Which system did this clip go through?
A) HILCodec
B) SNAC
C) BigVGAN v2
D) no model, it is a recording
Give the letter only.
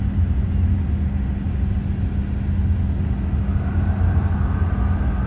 D